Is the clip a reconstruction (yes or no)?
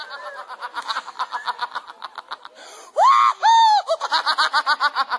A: no